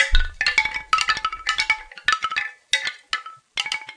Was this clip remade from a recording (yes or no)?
no